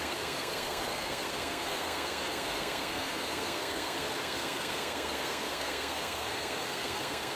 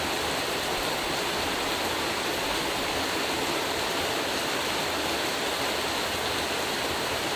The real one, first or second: second